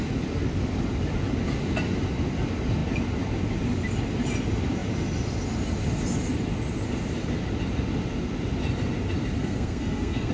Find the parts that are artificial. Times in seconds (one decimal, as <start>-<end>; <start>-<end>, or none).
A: 9.4-10.3

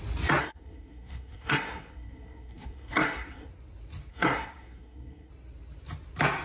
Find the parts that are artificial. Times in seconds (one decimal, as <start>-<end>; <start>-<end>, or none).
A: 0.4-3.5; 4.1-5.3

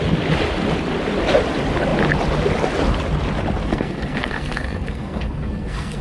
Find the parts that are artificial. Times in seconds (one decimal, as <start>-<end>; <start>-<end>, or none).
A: 3.7-6.0

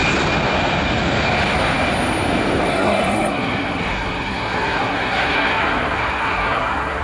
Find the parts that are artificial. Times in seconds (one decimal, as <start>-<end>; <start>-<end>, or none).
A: 2.7-7.0

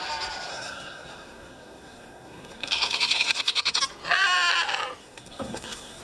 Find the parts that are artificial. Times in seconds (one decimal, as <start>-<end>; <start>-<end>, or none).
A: 0.5-3.8; 5.0-6.0

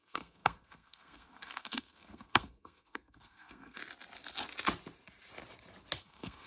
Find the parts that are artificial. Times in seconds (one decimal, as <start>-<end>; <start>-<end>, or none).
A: 0.0-3.8; 6.0-6.5